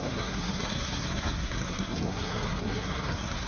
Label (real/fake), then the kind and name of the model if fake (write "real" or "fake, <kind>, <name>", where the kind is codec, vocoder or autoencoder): fake, codec, SNAC